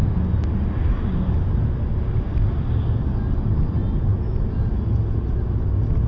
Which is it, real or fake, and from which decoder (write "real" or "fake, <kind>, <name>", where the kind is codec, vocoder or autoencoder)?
real